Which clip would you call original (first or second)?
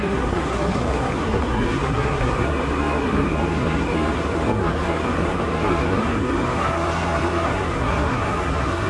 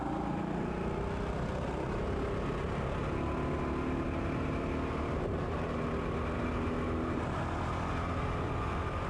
second